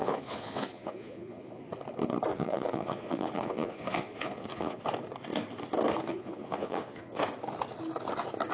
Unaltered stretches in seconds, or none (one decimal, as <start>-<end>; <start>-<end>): 1.6-2.3; 4.8-6.1; 7.2-8.5